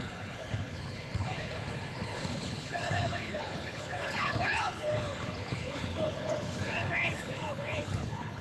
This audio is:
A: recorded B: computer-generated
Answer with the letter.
B